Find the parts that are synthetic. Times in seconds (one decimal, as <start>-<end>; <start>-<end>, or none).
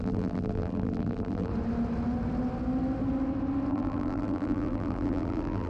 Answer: 0.0-1.5; 3.7-5.7